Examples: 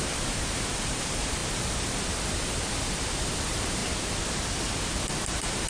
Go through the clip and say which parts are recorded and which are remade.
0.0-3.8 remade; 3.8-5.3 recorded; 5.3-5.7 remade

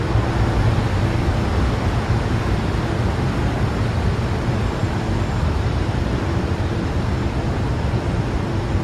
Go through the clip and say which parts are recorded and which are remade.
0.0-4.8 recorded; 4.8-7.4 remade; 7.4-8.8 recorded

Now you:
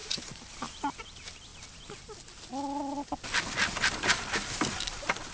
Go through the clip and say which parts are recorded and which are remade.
0.0-0.8 remade; 0.8-5.3 recorded

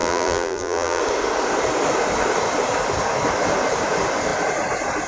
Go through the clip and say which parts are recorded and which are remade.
0.0-1.0 remade; 1.0-5.1 recorded

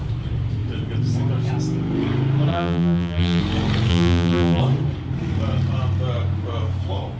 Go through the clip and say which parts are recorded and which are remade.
0.0-2.5 recorded; 2.5-3.4 remade; 3.4-3.9 recorded; 3.9-4.6 remade; 4.6-7.2 recorded

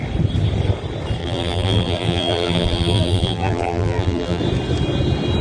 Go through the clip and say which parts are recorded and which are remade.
0.0-1.2 recorded; 1.2-4.4 remade; 4.4-5.4 recorded

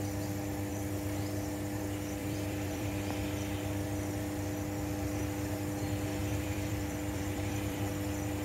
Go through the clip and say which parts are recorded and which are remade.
0.0-2.2 recorded; 2.2-2.9 remade; 2.9-6.2 recorded; 6.2-7.9 remade; 7.9-8.4 recorded

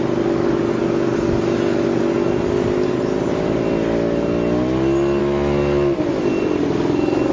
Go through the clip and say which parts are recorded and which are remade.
0.0-7.3 recorded